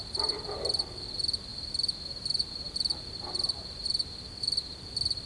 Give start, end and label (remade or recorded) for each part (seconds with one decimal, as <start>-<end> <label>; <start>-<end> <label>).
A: 0.0-5.3 recorded